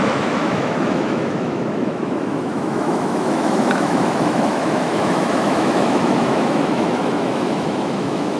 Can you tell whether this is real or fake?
fake